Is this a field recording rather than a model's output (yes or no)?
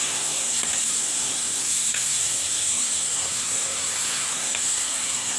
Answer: no